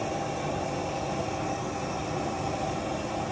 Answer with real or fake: real